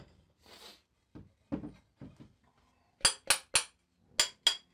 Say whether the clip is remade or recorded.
recorded